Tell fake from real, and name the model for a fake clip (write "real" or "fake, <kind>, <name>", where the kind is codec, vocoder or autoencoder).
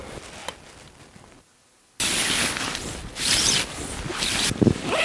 real